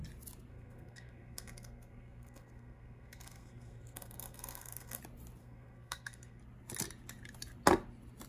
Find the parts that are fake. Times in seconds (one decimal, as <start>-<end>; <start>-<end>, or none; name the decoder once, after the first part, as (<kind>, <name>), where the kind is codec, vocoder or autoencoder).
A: 0.5-5.0 (codec, SNAC); 5.4-6.4